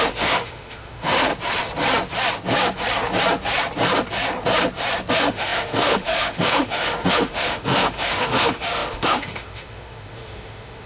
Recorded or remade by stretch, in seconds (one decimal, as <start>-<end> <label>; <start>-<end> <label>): 0.0-1.3 remade; 1.3-5.1 recorded; 5.1-10.9 remade